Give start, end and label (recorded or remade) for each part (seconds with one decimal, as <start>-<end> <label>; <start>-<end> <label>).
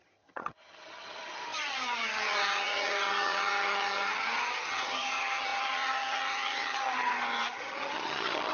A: 0.0-8.5 remade